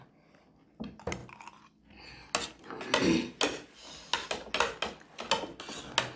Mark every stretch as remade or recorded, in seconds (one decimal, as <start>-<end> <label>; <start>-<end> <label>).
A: 0.0-6.2 recorded